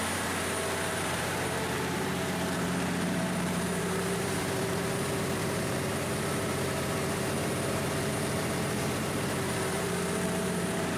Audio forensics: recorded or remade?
remade